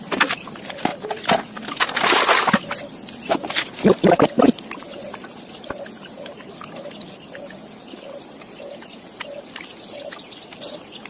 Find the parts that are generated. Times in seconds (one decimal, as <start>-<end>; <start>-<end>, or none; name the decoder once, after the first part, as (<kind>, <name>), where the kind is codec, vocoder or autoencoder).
none